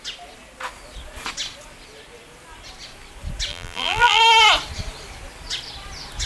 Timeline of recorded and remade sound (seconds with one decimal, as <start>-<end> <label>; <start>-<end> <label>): 0.0-3.5 recorded; 3.5-4.2 remade; 4.2-6.3 recorded